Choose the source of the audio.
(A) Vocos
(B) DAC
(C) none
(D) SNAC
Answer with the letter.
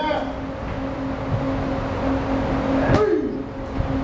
C